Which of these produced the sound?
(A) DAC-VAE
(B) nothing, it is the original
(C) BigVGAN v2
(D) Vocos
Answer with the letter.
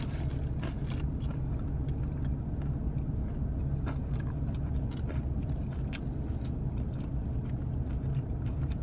B